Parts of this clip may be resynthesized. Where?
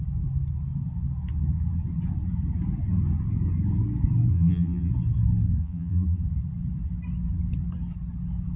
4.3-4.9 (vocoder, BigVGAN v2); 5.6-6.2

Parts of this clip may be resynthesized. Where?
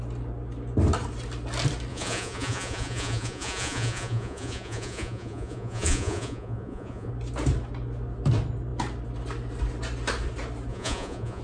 1.9-7.1 (vocoder, Vocos); 10.7-11.4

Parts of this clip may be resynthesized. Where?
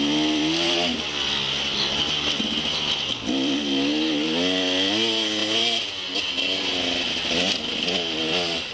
none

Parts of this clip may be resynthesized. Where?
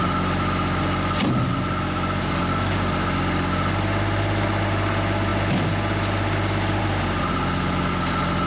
none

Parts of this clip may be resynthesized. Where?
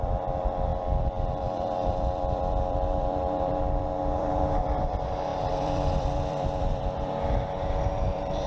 0.0-8.5 (vocoder, BigVGAN v2)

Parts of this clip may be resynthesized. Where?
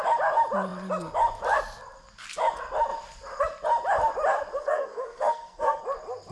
4.5-5.8 (codec, SNAC)